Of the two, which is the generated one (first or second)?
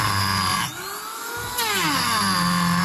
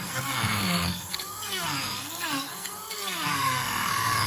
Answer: second